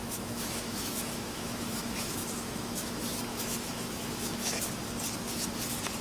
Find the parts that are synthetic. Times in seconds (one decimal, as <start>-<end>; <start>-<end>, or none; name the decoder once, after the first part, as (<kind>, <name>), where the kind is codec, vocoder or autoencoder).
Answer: 0.0-2.9 (autoencoder, DAC-VAE); 3.3-4.7